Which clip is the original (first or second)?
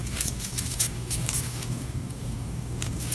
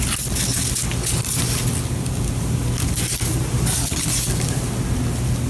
second